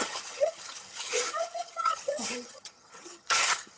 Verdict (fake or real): fake